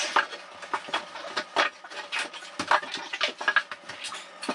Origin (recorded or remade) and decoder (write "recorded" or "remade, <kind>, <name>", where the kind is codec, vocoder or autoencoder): recorded